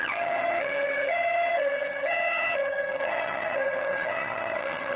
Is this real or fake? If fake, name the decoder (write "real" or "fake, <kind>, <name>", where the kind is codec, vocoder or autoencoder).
fake, vocoder, HiFi-GAN